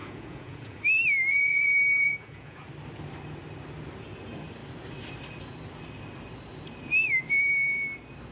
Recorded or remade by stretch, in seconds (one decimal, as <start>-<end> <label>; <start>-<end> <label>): 0.0-0.8 remade; 0.8-1.3 recorded; 1.3-2.7 remade; 2.7-8.3 recorded

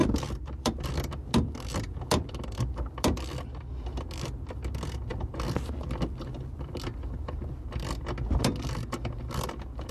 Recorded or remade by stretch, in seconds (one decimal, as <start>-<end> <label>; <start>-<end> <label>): 0.0-0.9 remade; 0.9-9.9 recorded

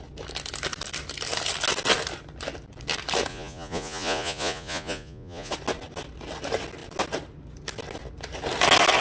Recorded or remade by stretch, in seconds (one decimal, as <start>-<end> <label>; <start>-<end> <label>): 0.0-3.3 recorded; 3.3-5.5 remade; 5.5-9.0 recorded

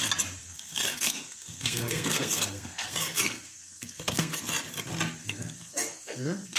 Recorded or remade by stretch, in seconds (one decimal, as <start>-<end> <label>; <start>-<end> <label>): 0.0-0.4 recorded; 0.4-4.4 remade; 4.4-5.2 recorded; 5.2-6.6 remade

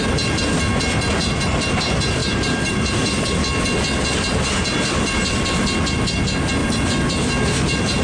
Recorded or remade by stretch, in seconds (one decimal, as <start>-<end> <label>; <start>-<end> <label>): 0.0-2.2 recorded; 2.2-3.4 remade; 3.4-8.0 recorded